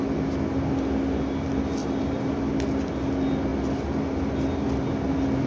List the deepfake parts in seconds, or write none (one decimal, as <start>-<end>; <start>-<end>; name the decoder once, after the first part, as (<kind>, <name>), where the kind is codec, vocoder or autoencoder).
1.8-2.4 (vocoder, BigVGAN v2)